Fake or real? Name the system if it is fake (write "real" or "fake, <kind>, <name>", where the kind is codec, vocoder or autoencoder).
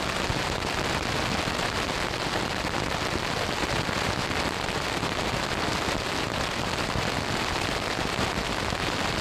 real